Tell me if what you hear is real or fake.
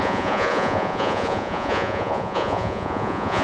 fake